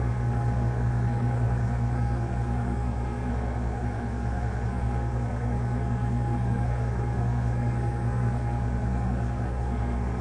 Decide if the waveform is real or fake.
fake